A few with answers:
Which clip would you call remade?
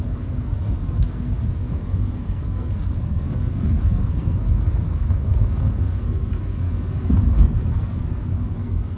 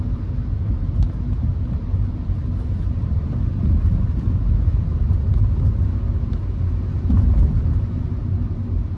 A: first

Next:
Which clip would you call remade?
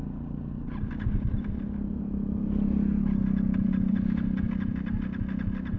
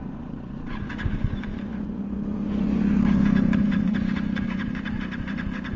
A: second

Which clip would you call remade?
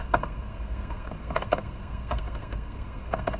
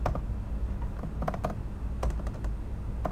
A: first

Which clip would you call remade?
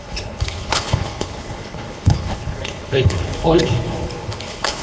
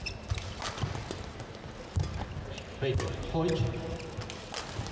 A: first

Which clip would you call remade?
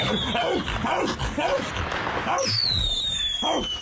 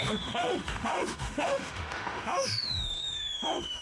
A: second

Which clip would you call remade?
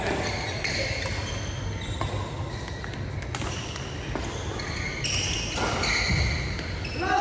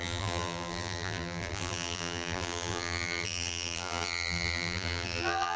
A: second